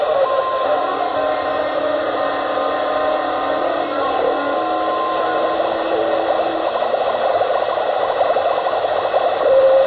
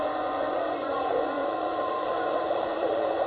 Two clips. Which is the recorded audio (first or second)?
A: first